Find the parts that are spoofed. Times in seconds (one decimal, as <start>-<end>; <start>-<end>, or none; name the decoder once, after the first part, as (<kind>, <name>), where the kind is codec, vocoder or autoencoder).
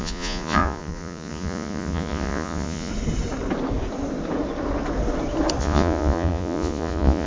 0.0-2.9 (vocoder, Vocos); 5.6-7.3